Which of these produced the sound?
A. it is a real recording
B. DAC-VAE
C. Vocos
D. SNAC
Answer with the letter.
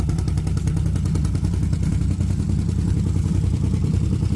A